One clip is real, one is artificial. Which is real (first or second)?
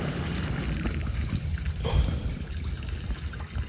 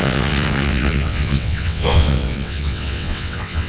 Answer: first